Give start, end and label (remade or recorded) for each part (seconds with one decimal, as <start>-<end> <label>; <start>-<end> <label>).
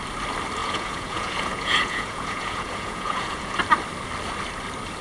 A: 0.0-0.6 recorded; 0.6-3.6 remade; 3.6-5.0 recorded